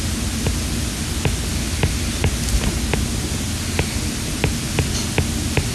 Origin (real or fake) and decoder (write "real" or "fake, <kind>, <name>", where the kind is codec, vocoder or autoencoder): real